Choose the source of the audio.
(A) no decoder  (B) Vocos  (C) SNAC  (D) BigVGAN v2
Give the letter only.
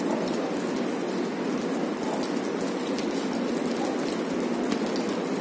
A